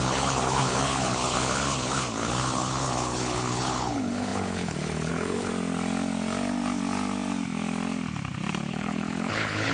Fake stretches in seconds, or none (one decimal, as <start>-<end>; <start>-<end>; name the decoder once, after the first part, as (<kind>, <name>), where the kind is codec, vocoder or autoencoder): 0.0-5.5 (codec, HILCodec); 8.7-9.7